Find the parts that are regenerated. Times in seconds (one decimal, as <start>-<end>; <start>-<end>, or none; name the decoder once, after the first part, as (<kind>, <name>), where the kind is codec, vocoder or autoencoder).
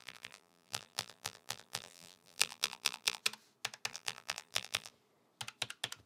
0.0-3.2 (vocoder, BigVGAN v2); 3.9-4.9